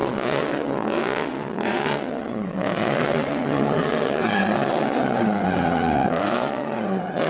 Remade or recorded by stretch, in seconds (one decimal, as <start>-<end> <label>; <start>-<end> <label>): 0.0-7.3 remade